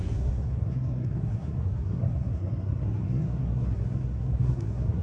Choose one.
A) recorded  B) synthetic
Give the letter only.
B